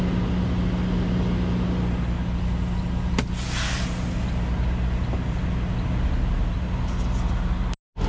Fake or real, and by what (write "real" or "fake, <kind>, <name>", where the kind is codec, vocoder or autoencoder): real